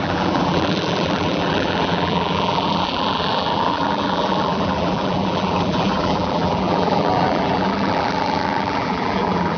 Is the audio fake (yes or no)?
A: yes